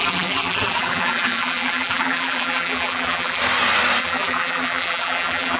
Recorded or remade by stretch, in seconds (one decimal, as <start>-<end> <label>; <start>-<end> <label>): 0.0-3.4 remade; 3.4-4.0 recorded; 4.0-5.6 remade